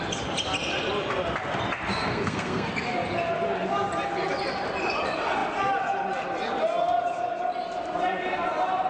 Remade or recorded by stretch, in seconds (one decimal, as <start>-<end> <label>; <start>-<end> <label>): 0.0-1.9 recorded; 1.9-2.7 remade; 2.7-8.9 recorded